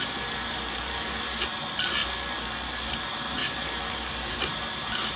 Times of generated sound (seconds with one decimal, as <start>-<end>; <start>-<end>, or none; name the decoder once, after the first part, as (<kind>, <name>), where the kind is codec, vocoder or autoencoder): 0.0-2.0 (vocoder, BigVGAN v2); 2.9-5.2